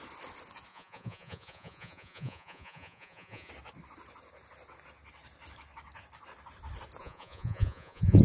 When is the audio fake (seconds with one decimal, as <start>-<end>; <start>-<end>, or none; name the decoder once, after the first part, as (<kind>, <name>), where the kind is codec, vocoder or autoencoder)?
0.7-3.5 (vocoder, Vocos); 7.0-8.2